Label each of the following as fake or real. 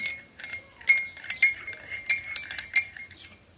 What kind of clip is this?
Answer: real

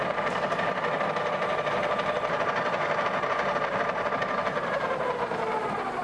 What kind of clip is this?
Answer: fake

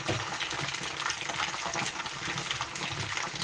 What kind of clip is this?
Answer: real